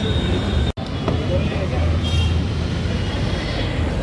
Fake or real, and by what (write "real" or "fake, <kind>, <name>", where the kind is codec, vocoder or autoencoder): real